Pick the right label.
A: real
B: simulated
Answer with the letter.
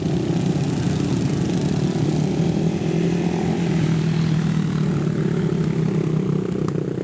A